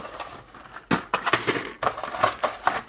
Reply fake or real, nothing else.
real